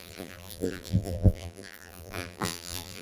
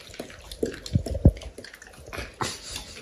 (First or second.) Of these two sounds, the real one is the second